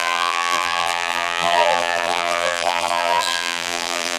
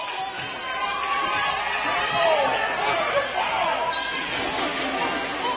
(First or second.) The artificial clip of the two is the first